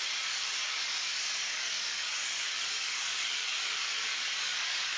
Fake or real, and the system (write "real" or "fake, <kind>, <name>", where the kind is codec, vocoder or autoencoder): fake, codec, DAC